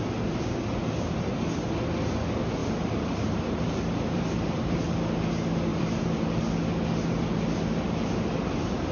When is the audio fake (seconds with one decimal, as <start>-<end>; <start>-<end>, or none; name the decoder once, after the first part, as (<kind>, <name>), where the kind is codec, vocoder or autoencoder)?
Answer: 2.6-4.8 (vocoder, BigVGAN v2); 5.7-6.4